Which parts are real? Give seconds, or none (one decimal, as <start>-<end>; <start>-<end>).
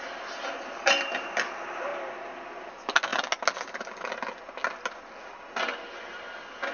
0.0-6.7